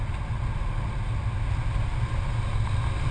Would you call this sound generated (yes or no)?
no